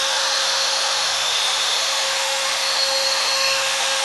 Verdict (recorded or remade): remade